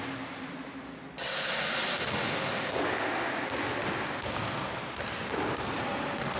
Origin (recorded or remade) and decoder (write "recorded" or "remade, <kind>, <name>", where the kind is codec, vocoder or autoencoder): recorded